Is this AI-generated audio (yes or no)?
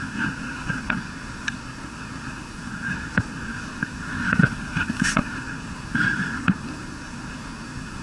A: yes